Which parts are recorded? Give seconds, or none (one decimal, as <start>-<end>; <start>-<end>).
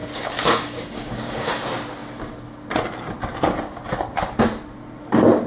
1.6-5.5